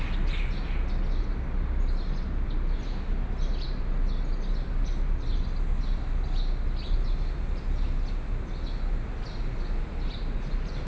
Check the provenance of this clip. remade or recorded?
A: recorded